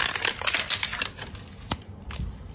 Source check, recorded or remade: recorded